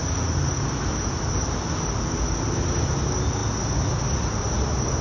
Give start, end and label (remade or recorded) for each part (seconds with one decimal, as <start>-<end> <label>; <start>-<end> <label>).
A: 0.0-5.0 recorded